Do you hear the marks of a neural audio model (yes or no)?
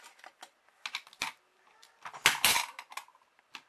no